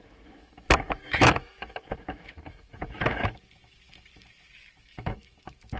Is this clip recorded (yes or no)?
no